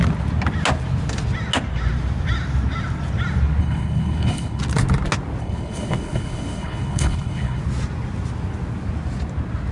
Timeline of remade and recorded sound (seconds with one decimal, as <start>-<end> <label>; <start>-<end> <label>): 0.0-3.6 recorded; 3.6-4.6 remade; 4.6-5.4 recorded; 5.4-7.6 remade; 7.6-9.7 recorded